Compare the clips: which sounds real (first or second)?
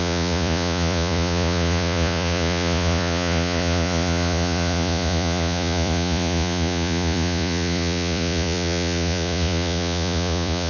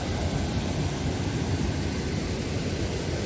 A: second